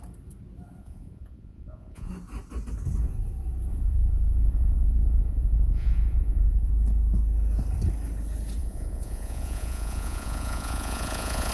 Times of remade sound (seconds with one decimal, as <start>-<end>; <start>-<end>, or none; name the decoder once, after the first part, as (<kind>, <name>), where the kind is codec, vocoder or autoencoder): 0.8-2.1 (vocoder, Vocos); 3.7-6.7; 8.6-11.5